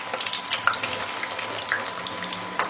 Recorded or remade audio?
remade